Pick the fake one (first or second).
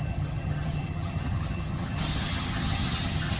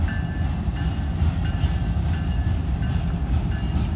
first